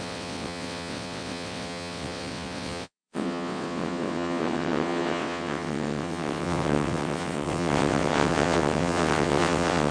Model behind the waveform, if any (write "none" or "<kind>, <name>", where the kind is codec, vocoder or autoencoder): vocoder, WaveNeXt